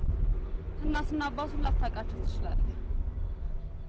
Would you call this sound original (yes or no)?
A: yes